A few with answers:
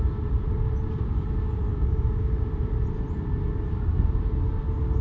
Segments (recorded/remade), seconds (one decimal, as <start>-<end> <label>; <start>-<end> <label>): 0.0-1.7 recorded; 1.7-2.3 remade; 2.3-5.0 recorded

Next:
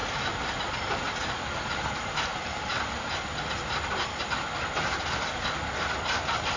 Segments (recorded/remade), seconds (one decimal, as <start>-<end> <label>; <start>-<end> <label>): 0.0-2.3 recorded; 2.3-3.2 remade; 3.2-6.6 recorded

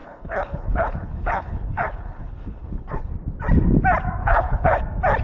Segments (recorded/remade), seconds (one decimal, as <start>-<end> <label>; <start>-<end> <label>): 0.0-3.1 remade; 3.1-4.2 recorded; 4.2-4.8 remade; 4.8-5.2 recorded